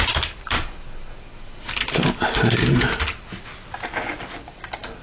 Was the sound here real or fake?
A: real